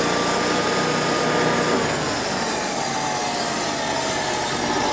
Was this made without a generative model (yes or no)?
yes